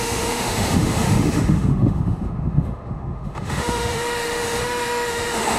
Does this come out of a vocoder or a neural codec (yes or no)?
yes